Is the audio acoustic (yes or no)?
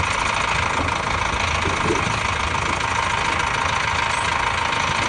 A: yes